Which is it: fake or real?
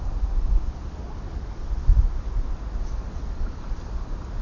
real